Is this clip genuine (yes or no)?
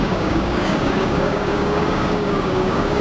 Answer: no